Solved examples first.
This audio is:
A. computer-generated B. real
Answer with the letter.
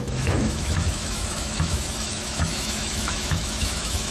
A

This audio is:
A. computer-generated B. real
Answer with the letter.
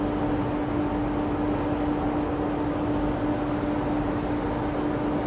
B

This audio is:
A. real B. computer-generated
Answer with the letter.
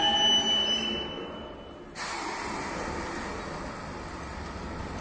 A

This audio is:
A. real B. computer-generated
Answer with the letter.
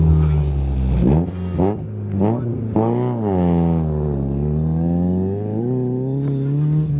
A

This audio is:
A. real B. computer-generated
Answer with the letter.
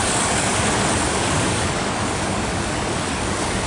B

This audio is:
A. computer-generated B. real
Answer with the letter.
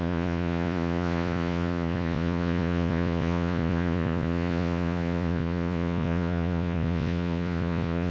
A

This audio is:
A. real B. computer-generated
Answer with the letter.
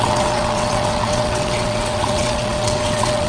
B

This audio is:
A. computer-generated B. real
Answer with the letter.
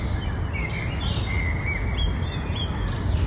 B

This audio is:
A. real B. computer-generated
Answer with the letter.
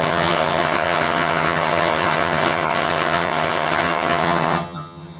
B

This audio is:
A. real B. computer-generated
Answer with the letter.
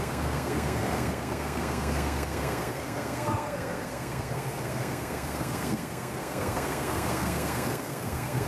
B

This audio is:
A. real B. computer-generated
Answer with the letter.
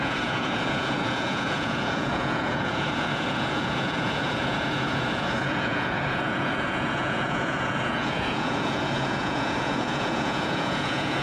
B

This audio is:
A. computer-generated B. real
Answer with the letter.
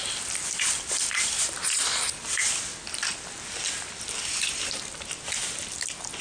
B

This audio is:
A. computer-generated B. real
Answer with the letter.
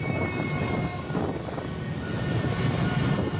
B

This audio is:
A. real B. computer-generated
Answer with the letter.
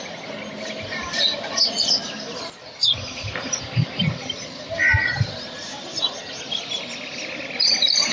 A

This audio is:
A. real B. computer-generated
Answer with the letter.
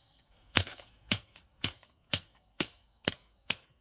B